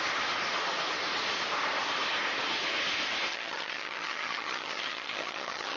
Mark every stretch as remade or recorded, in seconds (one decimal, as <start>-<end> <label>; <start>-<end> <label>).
0.0-3.3 recorded; 3.3-5.8 remade